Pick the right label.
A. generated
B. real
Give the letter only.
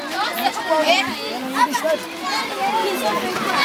B